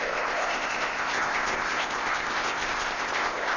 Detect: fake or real fake